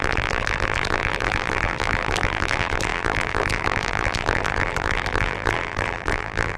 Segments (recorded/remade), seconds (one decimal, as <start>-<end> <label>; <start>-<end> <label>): 0.0-6.6 remade